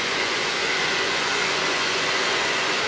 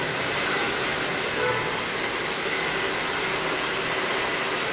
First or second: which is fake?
first